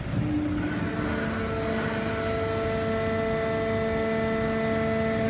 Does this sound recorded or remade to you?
recorded